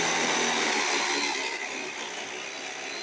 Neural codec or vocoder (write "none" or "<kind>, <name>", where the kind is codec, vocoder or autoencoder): none